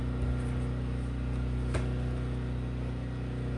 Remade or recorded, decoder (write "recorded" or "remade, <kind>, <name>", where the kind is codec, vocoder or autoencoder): recorded